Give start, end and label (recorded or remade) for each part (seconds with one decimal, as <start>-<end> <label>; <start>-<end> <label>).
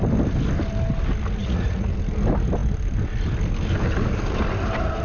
0.0-1.4 recorded; 1.4-1.9 remade; 1.9-5.0 recorded